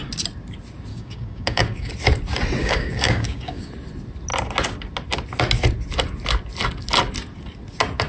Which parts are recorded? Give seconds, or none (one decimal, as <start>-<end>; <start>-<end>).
0.0-0.9; 1.9-2.6; 3.7-8.1